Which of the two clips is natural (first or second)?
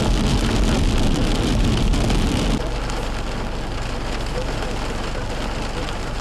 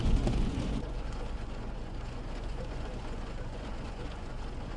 first